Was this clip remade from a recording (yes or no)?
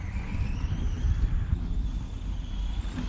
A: yes